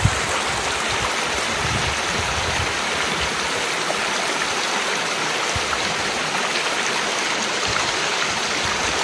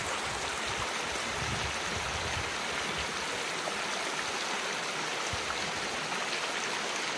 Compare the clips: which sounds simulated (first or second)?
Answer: first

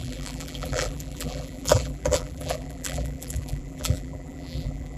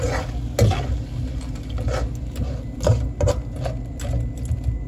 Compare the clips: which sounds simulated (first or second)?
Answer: first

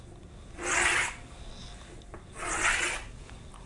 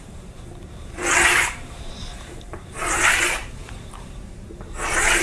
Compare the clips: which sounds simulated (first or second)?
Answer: second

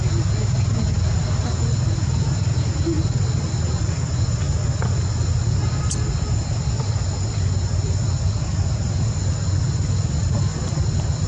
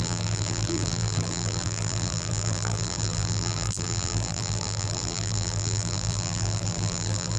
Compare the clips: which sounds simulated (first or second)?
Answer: second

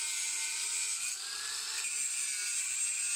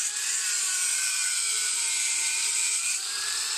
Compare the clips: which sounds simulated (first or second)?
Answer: second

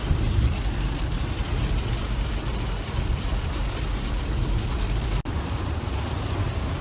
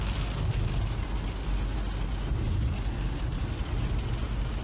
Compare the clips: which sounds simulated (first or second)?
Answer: first